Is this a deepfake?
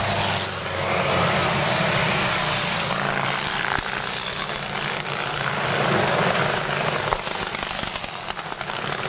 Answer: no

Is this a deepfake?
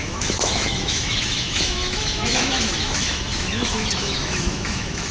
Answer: yes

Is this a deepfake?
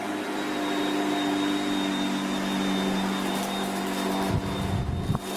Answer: no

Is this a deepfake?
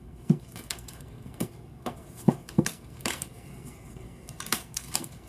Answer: yes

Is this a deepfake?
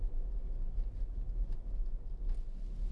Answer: no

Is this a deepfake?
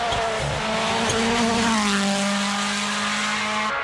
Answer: no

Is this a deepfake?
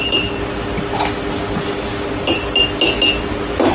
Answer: no